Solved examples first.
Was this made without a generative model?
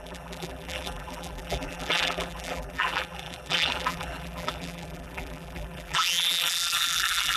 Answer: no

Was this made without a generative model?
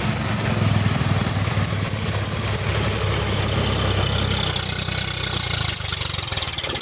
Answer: yes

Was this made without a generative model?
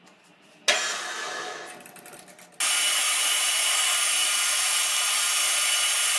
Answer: yes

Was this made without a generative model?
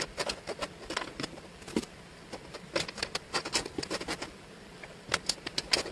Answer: yes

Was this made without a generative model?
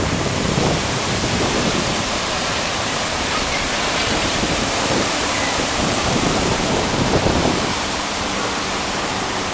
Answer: no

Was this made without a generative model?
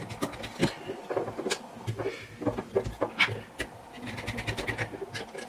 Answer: yes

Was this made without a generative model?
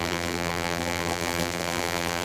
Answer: no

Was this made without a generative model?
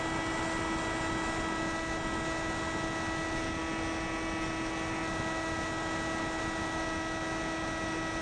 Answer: yes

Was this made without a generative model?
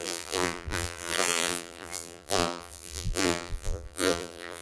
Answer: no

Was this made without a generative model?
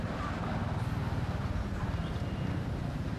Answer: yes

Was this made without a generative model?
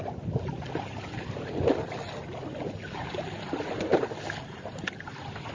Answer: yes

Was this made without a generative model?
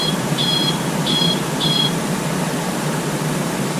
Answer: no